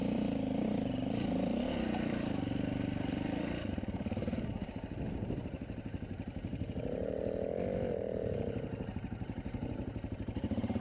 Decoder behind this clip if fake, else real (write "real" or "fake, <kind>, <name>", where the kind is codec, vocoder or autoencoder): fake, vocoder, BigVGAN v2